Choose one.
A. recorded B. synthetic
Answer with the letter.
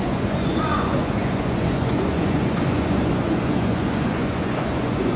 B